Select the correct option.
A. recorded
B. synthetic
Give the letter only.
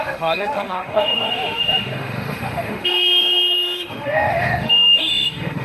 B